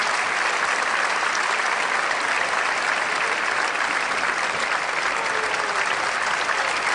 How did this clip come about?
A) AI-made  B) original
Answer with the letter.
B